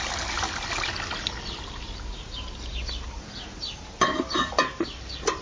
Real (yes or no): yes